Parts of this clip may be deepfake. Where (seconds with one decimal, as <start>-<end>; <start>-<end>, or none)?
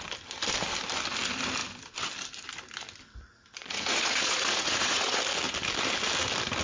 3.6-5.2